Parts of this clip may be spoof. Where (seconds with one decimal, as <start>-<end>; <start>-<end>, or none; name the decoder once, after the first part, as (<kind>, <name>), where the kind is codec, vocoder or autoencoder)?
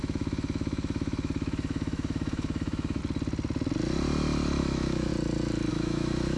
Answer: 0.0-3.0 (autoencoder, DAC-VAE); 4.6-5.1; 5.7-6.4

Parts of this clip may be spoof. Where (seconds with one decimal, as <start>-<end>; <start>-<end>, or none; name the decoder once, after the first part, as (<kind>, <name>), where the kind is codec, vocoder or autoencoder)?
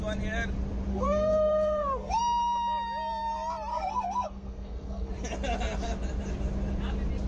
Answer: 0.9-2.2 (codec, SNAC); 3.7-5.1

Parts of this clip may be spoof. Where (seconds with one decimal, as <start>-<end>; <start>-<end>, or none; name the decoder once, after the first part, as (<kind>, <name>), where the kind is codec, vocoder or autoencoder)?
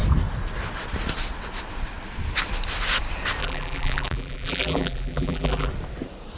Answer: 3.4-5.7 (vocoder, BigVGAN v2)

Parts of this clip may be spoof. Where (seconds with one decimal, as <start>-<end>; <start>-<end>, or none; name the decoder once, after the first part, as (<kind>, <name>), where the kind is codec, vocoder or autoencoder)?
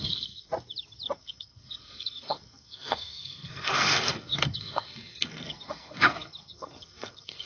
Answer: 0.0-0.5 (codec, SNAC); 1.2-7.5